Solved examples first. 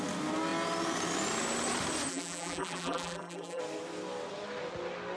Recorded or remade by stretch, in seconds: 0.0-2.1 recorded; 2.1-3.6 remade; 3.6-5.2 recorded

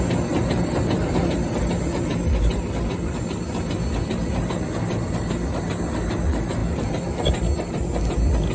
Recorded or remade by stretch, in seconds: 0.0-8.5 recorded